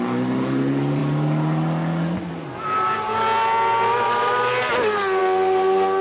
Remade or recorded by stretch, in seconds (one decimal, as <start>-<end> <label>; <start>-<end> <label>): 0.0-6.0 recorded